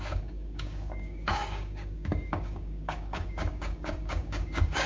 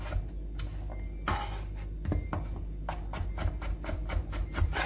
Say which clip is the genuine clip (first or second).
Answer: second